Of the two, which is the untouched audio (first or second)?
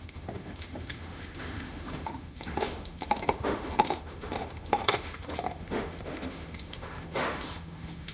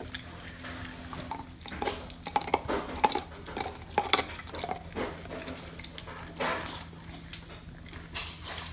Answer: second